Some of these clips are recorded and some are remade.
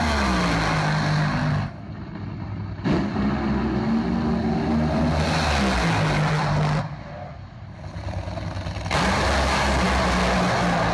recorded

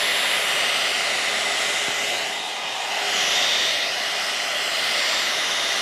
recorded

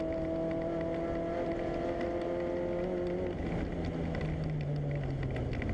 recorded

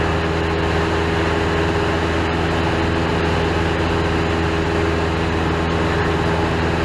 recorded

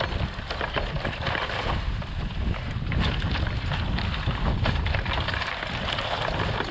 recorded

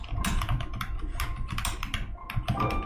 recorded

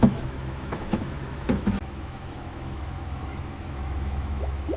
remade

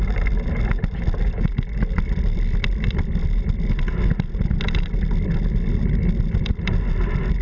recorded